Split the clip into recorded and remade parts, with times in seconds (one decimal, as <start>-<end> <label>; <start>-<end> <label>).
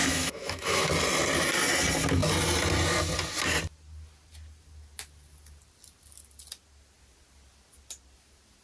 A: 0.0-0.9 remade; 0.9-8.6 recorded